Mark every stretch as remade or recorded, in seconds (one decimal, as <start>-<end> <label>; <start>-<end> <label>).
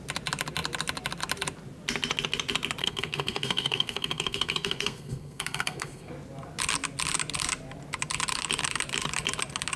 0.0-2.8 recorded; 2.8-6.1 remade; 6.1-9.8 recorded